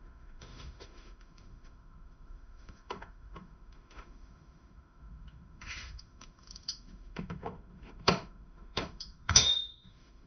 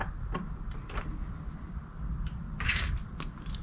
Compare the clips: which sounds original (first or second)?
second